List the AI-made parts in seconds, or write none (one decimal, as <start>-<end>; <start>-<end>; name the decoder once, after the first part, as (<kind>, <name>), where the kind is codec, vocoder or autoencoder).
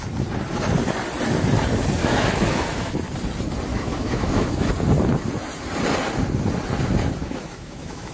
2.0-2.9 (autoencoder, DAC-VAE); 3.7-4.7; 7.2-8.1